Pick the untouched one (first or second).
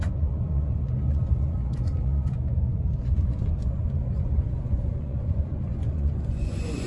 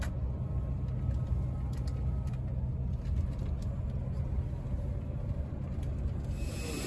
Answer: second